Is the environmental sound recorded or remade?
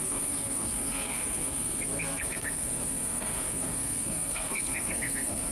remade